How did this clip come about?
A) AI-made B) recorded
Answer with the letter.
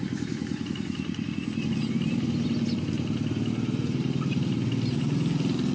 B